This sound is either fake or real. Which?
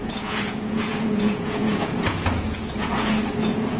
fake